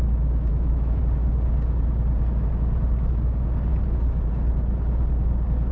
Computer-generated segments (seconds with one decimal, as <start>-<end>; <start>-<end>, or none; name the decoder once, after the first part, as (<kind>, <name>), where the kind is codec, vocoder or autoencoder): 0.5-1.0 (autoencoder, DAC-VAE)